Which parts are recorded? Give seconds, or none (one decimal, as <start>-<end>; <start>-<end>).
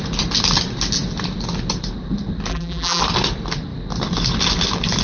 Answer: 0.0-2.5; 3.0-5.0